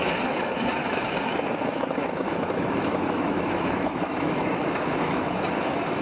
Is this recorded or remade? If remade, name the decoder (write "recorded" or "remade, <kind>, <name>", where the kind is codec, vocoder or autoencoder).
remade, autoencoder, DAC-VAE